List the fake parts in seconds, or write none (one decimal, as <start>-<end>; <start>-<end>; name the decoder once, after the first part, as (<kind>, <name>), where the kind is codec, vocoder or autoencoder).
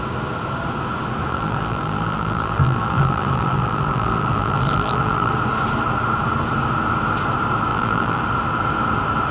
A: 1.3-5.3 (vocoder, BigVGAN v2); 7.7-8.2